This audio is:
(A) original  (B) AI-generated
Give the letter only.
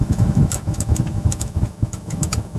B